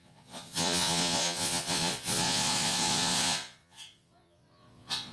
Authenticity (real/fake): fake